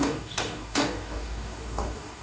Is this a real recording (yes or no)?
no